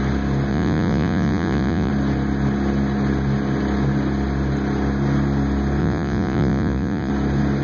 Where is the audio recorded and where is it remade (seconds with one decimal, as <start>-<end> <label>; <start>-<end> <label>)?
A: 0.0-0.5 recorded; 0.5-1.9 remade; 1.9-5.8 recorded; 5.8-7.1 remade; 7.1-7.6 recorded